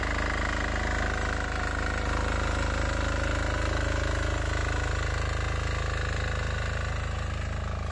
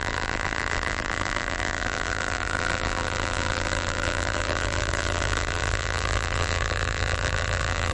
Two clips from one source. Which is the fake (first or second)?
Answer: second